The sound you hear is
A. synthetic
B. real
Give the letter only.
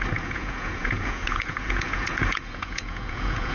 A